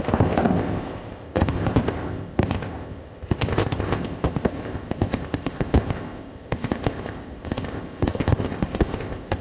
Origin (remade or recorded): remade